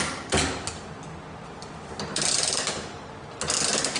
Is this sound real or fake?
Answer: real